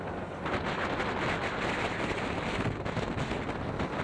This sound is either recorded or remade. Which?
recorded